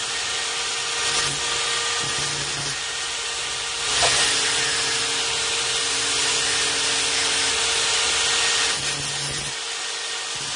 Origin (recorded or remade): recorded